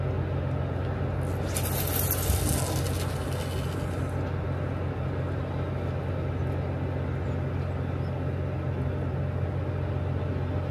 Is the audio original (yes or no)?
yes